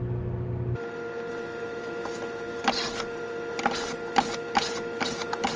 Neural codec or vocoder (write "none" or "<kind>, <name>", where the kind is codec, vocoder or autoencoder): none